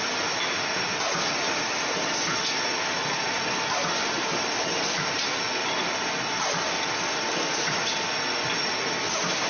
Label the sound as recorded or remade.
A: recorded